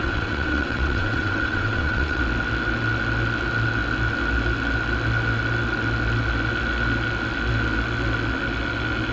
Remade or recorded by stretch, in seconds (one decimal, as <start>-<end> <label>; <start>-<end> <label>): 0.0-2.2 remade; 2.2-9.1 recorded